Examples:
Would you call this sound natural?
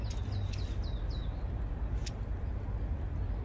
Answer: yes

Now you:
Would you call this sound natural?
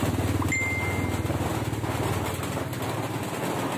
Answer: yes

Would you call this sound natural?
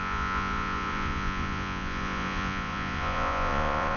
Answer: no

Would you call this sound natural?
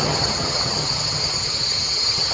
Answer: no